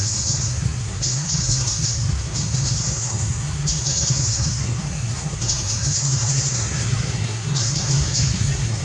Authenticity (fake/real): fake